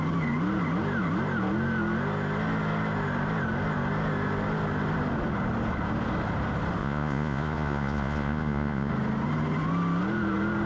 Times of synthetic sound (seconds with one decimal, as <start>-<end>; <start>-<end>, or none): 6.8-8.9